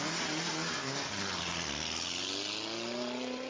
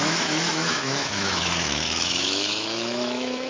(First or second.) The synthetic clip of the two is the second